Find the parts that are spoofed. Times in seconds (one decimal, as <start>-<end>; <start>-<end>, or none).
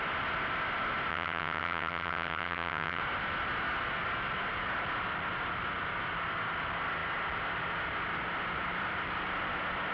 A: 1.1-3.0